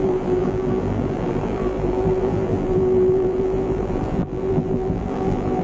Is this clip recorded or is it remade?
remade